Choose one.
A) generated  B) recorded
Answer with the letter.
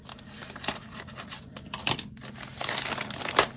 B